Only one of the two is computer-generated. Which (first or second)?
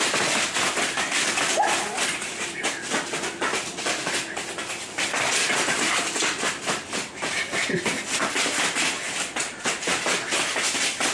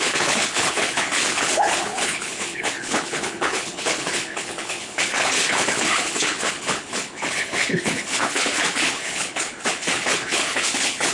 second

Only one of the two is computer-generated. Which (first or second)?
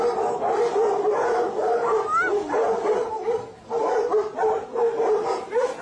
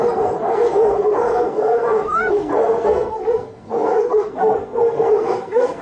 second